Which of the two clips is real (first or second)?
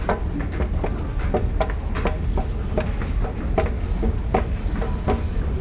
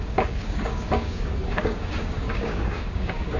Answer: first